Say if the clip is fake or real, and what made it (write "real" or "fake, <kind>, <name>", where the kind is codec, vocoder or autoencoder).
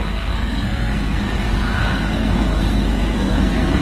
fake, codec, SNAC